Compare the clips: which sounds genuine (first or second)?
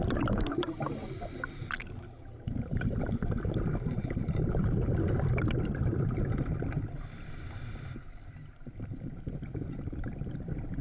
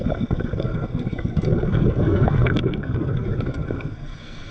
first